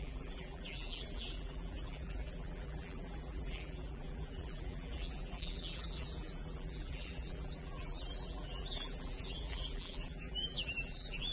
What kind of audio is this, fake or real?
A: fake